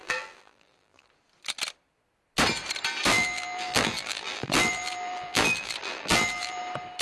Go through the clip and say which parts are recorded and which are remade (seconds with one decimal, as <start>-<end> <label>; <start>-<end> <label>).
0.0-1.1 remade; 1.1-3.1 recorded; 3.1-6.6 remade; 6.6-7.0 recorded